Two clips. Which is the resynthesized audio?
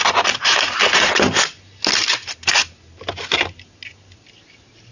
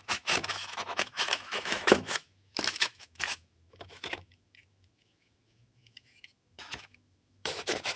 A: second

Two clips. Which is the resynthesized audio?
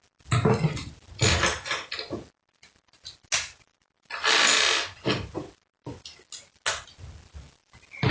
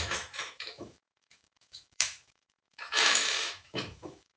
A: second